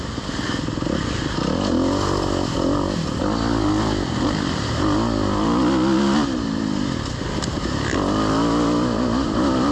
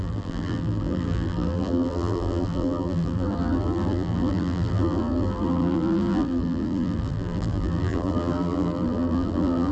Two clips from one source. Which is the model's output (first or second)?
second